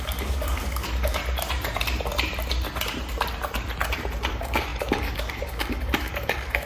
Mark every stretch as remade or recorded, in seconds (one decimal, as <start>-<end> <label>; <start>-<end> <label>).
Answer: 0.0-1.2 remade; 1.2-4.3 recorded; 4.3-6.7 remade